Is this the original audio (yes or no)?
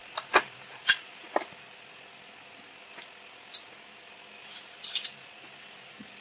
yes